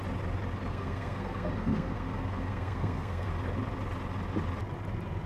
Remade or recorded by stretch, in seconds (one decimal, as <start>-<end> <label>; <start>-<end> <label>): 0.0-0.7 recorded; 0.7-3.3 remade; 3.3-5.3 recorded